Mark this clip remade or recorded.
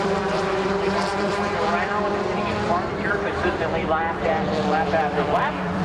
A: remade